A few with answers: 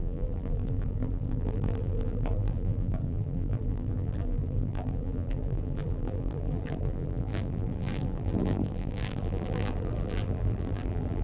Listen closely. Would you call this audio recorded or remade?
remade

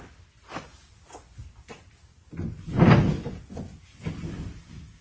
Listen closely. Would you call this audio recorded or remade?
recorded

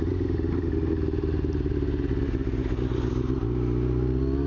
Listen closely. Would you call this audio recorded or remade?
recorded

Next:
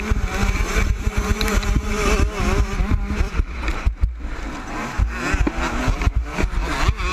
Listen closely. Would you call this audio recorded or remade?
recorded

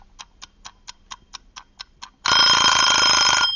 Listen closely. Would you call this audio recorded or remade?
recorded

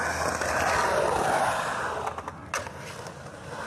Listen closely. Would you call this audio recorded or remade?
recorded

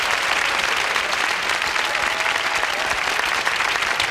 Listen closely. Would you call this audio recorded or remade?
recorded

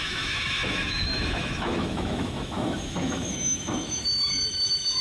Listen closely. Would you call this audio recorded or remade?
remade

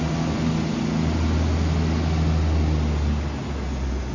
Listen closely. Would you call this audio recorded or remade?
recorded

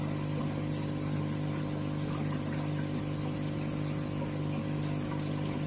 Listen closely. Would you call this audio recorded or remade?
recorded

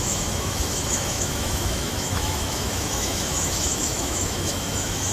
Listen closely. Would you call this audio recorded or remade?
remade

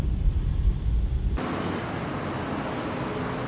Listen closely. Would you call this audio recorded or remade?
recorded